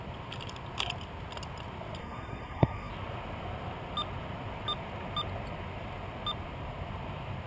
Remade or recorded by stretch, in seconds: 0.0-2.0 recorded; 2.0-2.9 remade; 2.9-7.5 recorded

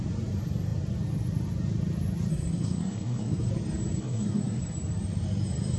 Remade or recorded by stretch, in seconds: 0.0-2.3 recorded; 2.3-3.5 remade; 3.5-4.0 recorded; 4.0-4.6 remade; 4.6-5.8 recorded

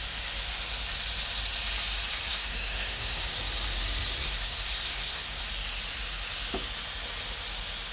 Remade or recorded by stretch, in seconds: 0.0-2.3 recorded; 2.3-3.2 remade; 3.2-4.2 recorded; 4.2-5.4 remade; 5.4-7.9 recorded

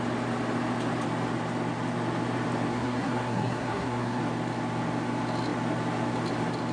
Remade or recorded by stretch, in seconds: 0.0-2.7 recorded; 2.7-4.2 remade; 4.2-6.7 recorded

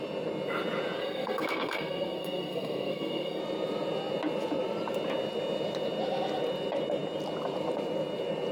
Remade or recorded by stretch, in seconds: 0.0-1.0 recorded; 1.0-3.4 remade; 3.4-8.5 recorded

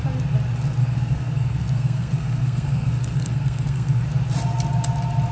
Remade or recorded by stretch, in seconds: 0.0-0.8 recorded; 0.8-4.0 remade; 4.0-5.3 recorded

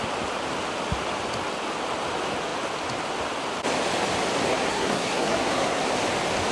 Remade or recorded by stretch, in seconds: 0.0-4.5 recorded; 4.5-5.8 remade; 5.8-6.5 recorded

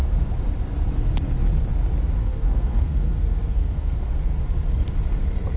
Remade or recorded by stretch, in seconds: 0.0-2.2 recorded; 2.2-4.1 remade; 4.1-5.6 recorded